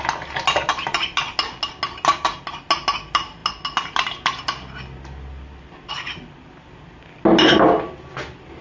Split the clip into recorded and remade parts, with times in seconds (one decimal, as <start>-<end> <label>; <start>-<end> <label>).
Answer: 0.0-8.6 recorded